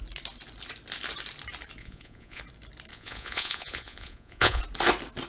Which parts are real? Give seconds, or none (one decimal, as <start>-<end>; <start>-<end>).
0.0-1.8; 2.4-2.9; 4.6-5.3